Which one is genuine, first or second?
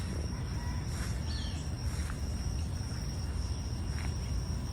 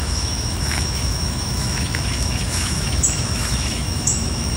first